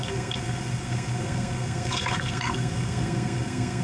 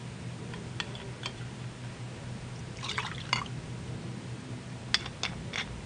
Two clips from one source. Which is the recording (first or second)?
second